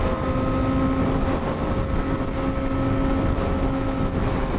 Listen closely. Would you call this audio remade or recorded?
recorded